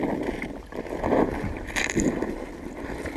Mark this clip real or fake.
real